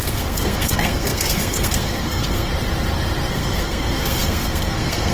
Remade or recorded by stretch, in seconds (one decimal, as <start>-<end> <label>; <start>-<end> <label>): 0.0-2.5 remade; 2.5-3.3 recorded; 3.3-5.1 remade